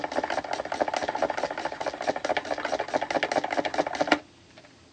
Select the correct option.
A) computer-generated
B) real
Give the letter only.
B